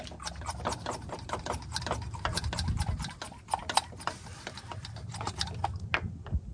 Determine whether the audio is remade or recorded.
recorded